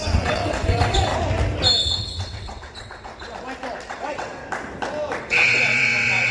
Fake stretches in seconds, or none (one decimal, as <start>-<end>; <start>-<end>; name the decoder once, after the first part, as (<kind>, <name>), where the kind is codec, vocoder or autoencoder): 0.0-1.1 (vocoder, WaveNeXt); 1.8-3.1; 3.9-4.4; 5.2-6.3